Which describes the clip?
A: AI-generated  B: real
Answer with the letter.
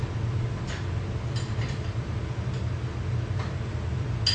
B